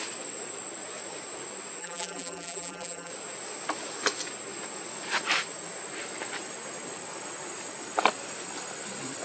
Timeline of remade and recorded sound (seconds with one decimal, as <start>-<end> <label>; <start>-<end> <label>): 0.0-1.8 recorded; 1.8-3.1 remade; 3.1-9.2 recorded